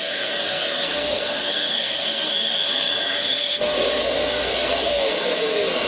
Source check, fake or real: fake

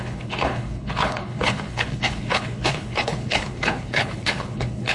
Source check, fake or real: fake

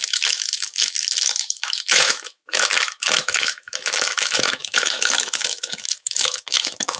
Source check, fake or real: fake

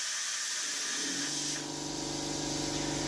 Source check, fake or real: real